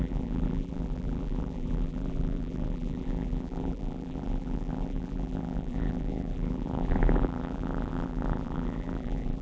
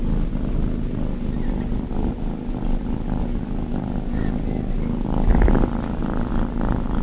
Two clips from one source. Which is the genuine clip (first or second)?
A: second